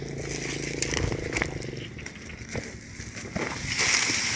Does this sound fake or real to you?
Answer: real